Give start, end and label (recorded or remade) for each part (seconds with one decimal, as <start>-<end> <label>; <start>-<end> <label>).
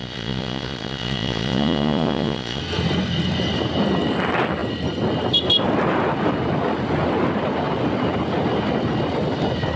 0.0-2.6 remade; 2.6-9.8 recorded